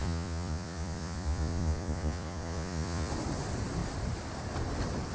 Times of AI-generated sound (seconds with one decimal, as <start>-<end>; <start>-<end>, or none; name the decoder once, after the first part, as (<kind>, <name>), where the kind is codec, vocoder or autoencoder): 0.0-3.1 (vocoder, Vocos)